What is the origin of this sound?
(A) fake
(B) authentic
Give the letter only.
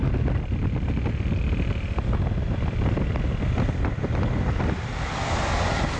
B